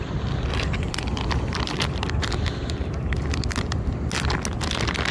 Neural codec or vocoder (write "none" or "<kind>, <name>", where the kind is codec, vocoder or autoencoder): none